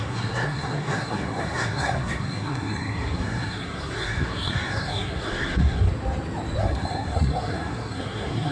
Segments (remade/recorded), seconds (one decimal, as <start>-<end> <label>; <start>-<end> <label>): 0.0-5.9 remade; 5.9-6.6 recorded; 6.6-8.5 remade